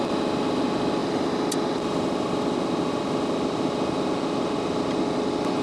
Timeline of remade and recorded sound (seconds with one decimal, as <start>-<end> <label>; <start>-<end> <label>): 0.0-5.6 recorded